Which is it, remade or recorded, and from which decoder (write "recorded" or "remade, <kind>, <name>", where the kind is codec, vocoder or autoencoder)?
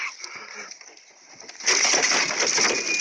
recorded